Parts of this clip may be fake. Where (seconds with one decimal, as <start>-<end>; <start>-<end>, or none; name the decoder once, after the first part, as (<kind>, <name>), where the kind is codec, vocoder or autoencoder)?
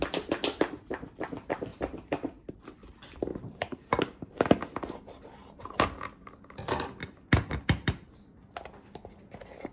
1.7-2.5 (vocoder, BigVGAN v2); 3.3-6.3